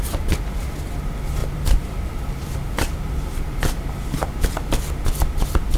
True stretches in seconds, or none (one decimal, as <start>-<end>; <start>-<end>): 0.0-1.4; 4.7-5.8